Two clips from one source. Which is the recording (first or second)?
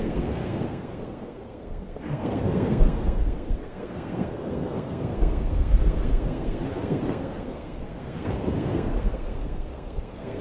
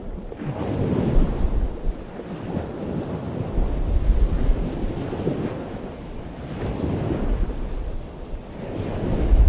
second